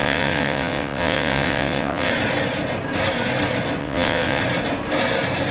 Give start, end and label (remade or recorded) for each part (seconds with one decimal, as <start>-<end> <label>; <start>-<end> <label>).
0.0-2.1 remade; 2.1-3.8 recorded; 3.8-4.4 remade; 4.4-5.5 recorded